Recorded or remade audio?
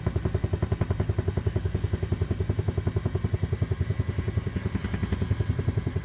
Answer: recorded